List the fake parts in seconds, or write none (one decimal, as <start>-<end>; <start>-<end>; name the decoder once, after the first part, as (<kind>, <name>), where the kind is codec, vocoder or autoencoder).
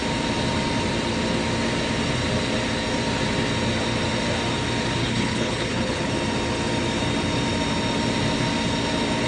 5.0-6.1 (codec, HILCodec)